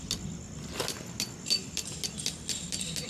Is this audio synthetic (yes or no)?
no